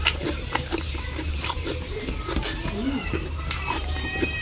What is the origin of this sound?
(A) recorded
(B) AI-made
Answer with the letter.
B